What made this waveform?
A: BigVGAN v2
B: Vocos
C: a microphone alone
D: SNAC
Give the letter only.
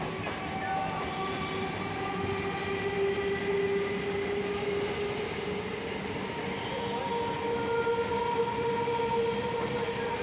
C